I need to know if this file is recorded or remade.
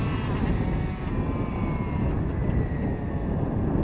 recorded